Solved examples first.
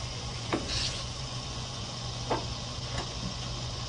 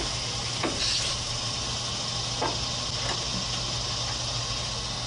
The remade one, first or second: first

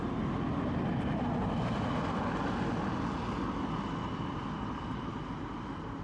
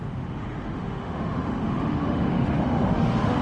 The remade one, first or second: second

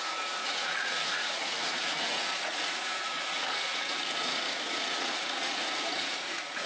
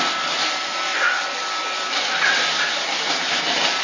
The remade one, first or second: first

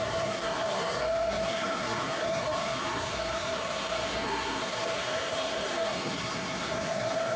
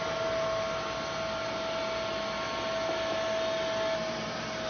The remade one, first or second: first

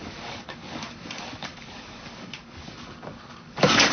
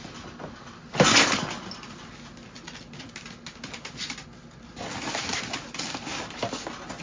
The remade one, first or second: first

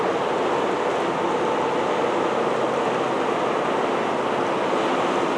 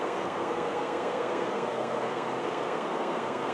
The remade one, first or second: second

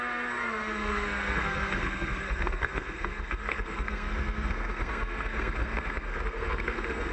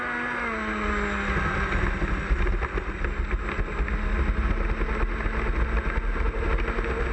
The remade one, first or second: first